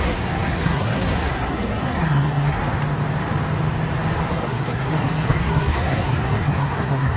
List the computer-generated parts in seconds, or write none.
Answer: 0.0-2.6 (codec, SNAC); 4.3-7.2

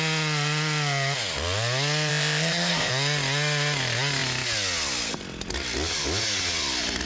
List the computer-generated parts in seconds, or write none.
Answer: 2.1-2.9 (codec, ZipCodec)

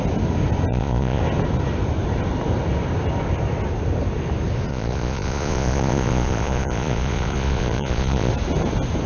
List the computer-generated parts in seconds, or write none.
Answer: 0.7-1.2 (vocoder, Vocos); 4.7-8.3

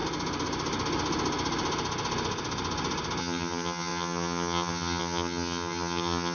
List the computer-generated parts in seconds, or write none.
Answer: 3.2-6.3 (vocoder, HiFi-GAN)

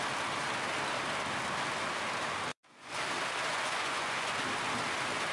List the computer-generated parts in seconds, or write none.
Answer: 2.5-3.0 (vocoder, Vocos); 3.5-4.4

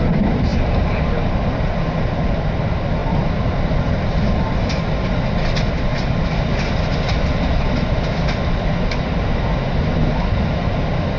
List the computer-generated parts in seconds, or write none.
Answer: none